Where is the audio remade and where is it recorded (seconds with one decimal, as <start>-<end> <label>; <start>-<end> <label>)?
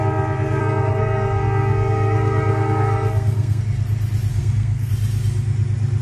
0.0-0.6 recorded; 0.6-3.6 remade; 3.6-4.3 recorded; 4.3-4.9 remade; 4.9-6.0 recorded